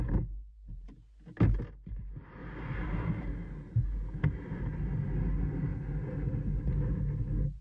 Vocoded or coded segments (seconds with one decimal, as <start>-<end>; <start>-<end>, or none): 2.4-3.1